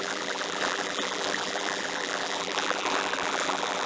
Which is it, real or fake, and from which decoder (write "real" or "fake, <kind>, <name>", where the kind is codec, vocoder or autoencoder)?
fake, vocoder, BigVGAN v2